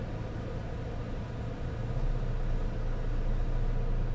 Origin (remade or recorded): recorded